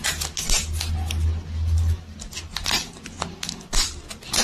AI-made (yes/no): no